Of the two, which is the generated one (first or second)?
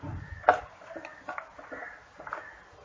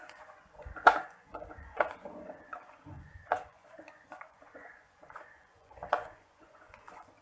second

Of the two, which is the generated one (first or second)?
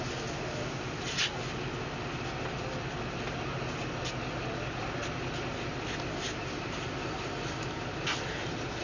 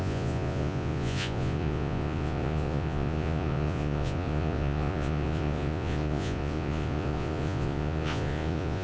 second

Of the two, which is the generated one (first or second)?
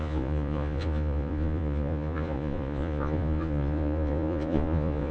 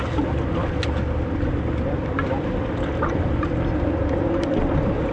first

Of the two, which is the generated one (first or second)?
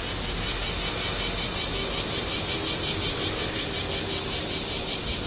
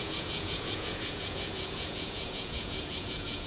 second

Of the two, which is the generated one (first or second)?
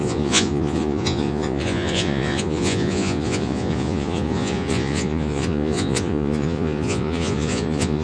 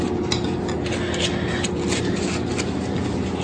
first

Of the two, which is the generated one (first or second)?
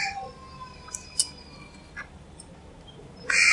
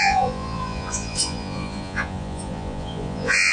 second